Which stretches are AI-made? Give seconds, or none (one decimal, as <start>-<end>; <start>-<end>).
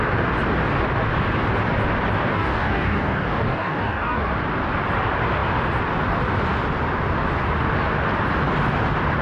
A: 2.3-4.3